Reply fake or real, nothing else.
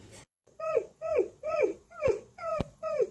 fake